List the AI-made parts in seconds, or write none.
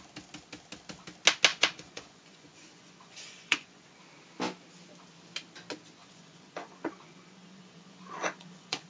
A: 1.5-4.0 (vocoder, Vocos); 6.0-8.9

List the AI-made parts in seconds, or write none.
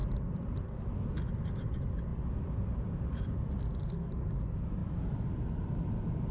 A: 0.0-0.9 (vocoder, BigVGAN v2); 2.1-3.9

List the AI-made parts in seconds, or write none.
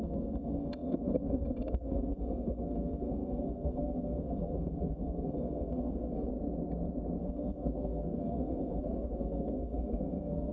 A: 0.0-6.3 (codec, SNAC); 7.2-10.5